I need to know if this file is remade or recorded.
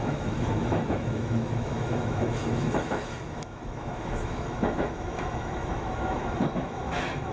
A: remade